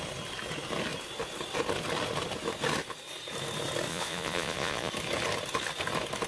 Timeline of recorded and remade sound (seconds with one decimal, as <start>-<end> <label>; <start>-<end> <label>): 0.0-3.9 recorded; 3.9-4.9 remade; 4.9-6.3 recorded